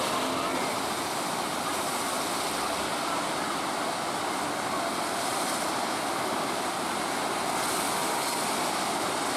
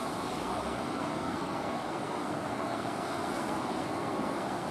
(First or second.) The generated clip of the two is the second